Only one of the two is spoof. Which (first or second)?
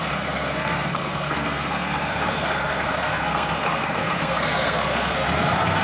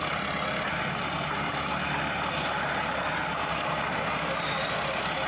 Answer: first